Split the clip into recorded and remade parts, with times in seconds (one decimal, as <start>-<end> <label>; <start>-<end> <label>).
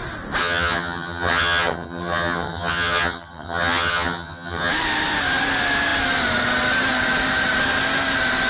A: 0.0-0.4 recorded; 0.4-4.7 remade; 4.7-8.5 recorded